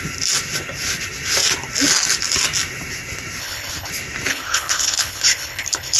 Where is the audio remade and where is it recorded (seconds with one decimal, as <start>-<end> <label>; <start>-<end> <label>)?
0.0-3.4 recorded; 3.4-3.9 remade; 3.9-4.3 recorded; 4.3-6.0 remade